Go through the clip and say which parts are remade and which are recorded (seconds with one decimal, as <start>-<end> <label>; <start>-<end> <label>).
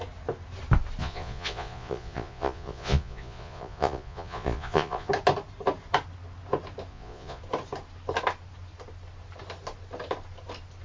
0.0-1.0 recorded; 1.0-5.1 remade; 5.1-6.9 recorded; 6.9-7.4 remade; 7.4-10.8 recorded